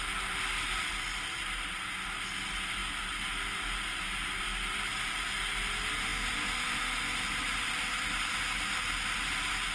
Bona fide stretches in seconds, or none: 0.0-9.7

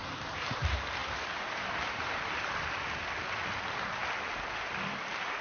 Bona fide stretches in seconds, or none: 0.5-1.0; 2.2-5.4

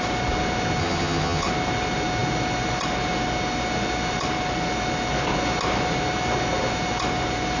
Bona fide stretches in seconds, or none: 0.0-0.8; 1.5-7.6

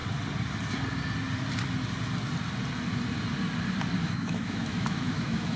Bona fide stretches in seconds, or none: 0.0-4.0

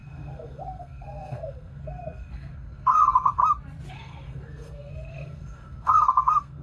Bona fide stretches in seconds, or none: 3.4-3.9

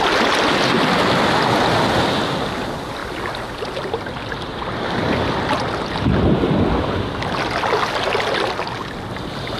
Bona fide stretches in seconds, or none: 0.0-9.6

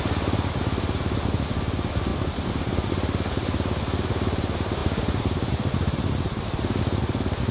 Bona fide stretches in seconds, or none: 0.0-2.1; 2.9-4.8